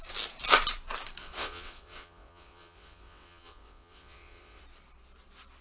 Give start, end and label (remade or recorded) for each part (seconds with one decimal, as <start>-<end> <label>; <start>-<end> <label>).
0.0-1.2 recorded; 1.2-4.6 remade; 4.6-5.6 recorded